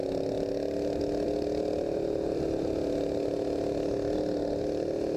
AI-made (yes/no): no